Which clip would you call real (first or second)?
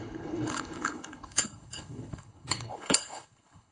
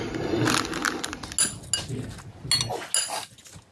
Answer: second